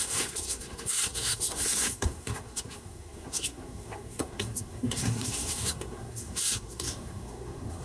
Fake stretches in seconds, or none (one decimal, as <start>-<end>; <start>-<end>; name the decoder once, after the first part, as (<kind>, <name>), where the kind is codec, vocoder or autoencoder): 0.0-7.8 (codec, SNAC)